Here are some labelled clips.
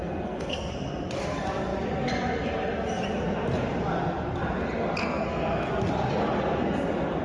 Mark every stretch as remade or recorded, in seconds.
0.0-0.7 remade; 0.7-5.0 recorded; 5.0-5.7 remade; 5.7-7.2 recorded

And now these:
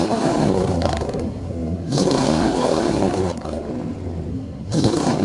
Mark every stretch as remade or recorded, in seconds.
0.0-3.7 remade; 3.7-4.3 recorded; 4.3-5.2 remade